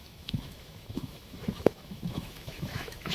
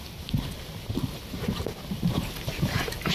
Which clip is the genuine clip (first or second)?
second